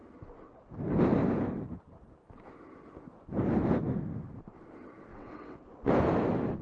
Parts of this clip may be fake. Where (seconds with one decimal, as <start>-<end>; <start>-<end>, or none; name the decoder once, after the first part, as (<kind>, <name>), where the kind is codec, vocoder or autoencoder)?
5.1-5.9 (vocoder, WaveNeXt)